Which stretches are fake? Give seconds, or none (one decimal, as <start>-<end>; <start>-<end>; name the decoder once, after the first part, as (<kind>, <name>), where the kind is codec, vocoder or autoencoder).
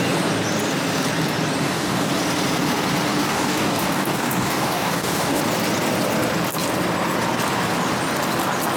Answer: 1.6-2.1 (codec, DAC); 3.2-5.4